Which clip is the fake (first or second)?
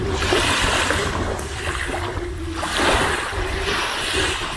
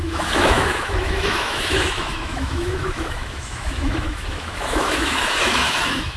second